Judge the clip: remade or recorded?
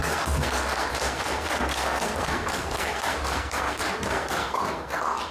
remade